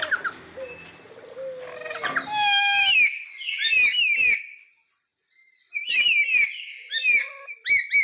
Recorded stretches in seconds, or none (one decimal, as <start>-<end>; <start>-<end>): 0.0-5.1; 6.6-8.0